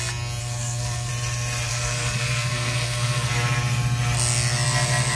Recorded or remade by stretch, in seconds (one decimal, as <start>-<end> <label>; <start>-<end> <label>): 0.0-0.4 recorded; 0.4-1.1 remade; 1.1-1.7 recorded; 1.7-3.3 remade; 3.3-5.2 recorded

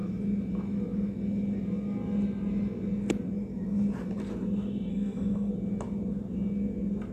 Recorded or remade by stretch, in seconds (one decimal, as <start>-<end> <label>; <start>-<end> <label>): 0.0-4.9 recorded; 4.9-5.5 remade; 5.5-7.1 recorded

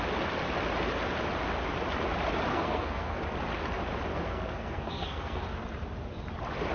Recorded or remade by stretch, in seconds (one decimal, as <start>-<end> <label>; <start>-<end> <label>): 0.0-2.5 recorded; 2.5-3.2 remade; 3.2-4.1 recorded; 4.1-5.4 remade; 5.4-6.7 recorded

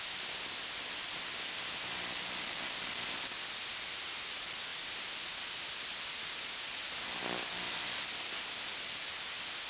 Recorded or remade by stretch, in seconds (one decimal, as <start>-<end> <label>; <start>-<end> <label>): 0.0-9.7 recorded